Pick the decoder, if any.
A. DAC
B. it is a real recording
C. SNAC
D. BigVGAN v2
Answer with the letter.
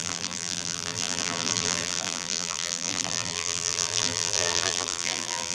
D